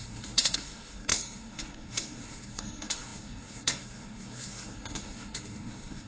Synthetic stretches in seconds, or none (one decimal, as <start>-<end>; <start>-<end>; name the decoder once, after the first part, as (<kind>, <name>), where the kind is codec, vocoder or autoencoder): 0.0-6.1 (codec, SNAC)